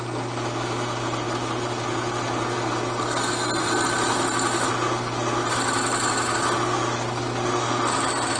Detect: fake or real real